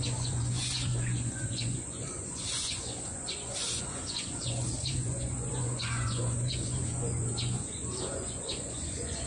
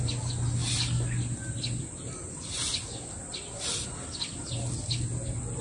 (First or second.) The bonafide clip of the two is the second